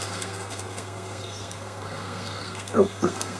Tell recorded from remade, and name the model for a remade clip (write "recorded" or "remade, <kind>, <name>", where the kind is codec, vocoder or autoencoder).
remade, codec, SNAC